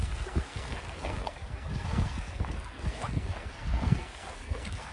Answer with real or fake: fake